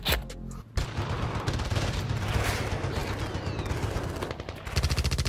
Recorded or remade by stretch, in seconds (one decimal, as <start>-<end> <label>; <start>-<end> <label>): 0.0-5.3 recorded